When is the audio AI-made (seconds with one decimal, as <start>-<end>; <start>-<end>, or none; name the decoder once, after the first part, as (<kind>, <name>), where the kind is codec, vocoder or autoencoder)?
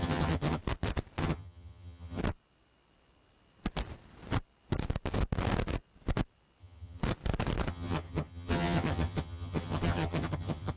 0.0-0.6 (vocoder, HiFi-GAN); 1.2-2.2; 6.6-7.0; 7.7-10.8